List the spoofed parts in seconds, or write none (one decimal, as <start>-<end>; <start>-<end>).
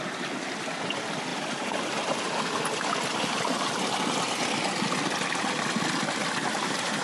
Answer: 1.3-2.4; 3.1-3.7; 6.4-7.0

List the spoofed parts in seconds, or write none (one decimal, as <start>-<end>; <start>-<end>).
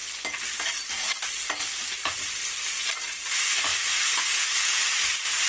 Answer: none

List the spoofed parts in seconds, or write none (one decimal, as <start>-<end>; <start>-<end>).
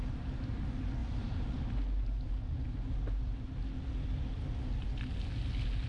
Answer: 1.0-1.6